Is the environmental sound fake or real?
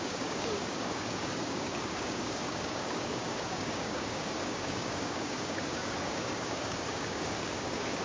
fake